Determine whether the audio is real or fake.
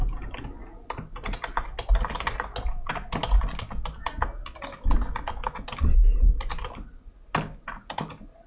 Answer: real